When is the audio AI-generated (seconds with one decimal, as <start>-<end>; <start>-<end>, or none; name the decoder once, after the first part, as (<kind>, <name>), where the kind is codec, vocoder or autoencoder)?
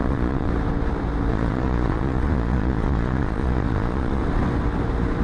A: 0.0-0.5 (vocoder, Vocos); 1.3-4.2